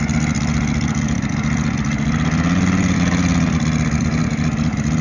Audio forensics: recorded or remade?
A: recorded